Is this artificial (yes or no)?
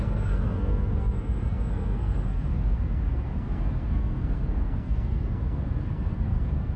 yes